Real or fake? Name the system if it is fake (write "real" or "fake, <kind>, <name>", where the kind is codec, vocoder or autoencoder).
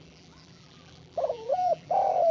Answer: fake, vocoder, BigVGAN v2